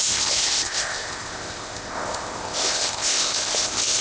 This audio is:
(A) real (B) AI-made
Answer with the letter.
B